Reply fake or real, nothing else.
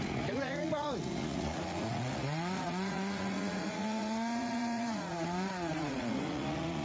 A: fake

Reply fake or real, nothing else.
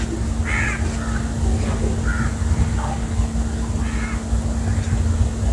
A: real